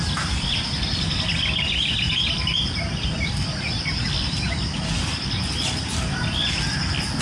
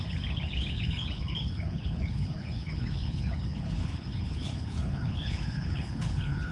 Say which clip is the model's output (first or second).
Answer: second